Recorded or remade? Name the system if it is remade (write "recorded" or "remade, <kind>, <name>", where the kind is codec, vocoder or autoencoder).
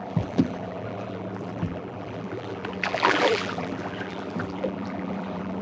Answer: remade, vocoder, BigVGAN v2